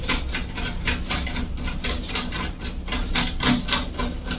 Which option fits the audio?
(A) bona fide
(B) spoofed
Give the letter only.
A